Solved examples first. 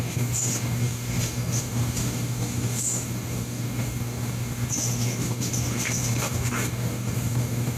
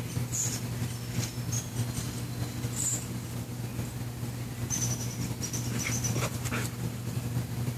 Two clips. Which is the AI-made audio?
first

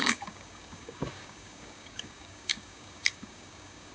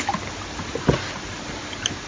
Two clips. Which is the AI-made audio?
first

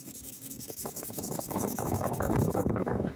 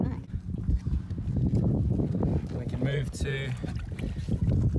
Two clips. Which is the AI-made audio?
first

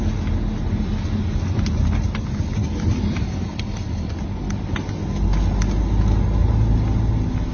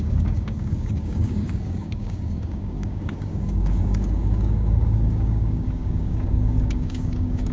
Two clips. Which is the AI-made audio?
second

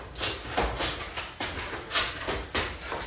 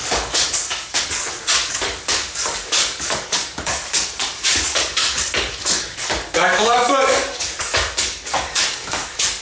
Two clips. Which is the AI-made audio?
second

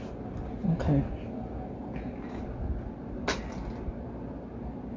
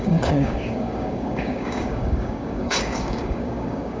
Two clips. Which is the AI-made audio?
second